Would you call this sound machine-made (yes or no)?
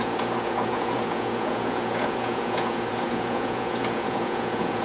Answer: yes